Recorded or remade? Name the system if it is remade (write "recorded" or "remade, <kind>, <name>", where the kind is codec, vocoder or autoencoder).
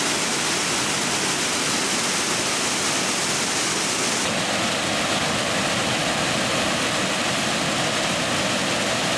recorded